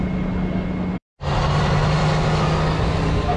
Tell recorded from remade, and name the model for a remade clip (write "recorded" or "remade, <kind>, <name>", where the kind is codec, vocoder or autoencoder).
recorded